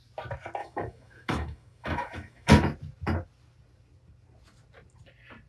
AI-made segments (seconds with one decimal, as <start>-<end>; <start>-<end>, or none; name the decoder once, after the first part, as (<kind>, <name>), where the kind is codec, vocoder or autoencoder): 0.6-2.5 (autoencoder, DAC-VAE)